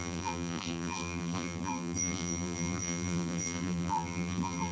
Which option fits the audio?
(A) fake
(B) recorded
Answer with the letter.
A